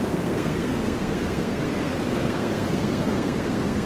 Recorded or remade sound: remade